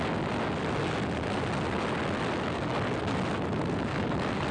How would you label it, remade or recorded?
recorded